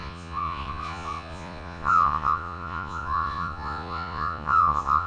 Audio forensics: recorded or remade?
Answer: remade